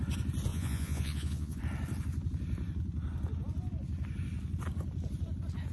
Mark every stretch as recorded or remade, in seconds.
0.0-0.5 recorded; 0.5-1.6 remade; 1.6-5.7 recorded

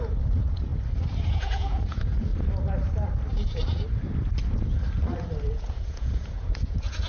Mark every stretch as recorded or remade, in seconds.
0.0-0.7 remade; 0.7-1.3 recorded; 1.3-2.3 remade; 2.3-5.5 recorded; 5.5-7.1 remade

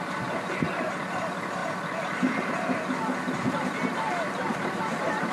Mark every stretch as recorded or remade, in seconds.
0.0-5.3 recorded

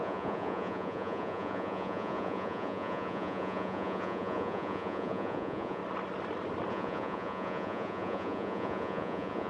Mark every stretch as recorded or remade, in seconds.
0.0-5.8 remade; 5.8-6.7 recorded; 6.7-9.5 remade

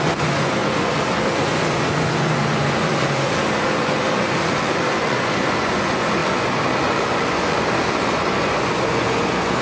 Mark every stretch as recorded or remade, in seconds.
0.0-9.6 remade

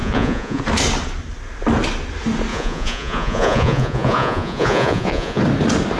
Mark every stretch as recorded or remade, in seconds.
0.0-0.6 remade; 0.6-2.5 recorded; 2.5-5.4 remade; 5.4-6.0 recorded